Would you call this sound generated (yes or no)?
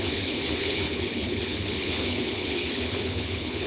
yes